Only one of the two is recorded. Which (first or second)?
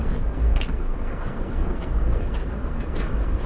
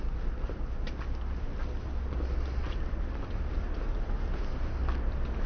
second